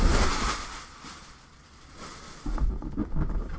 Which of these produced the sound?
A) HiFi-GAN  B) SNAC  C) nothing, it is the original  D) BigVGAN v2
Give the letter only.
C